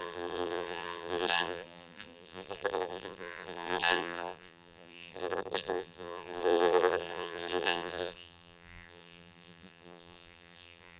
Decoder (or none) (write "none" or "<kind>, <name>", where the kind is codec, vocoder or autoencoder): vocoder, BigVGAN v2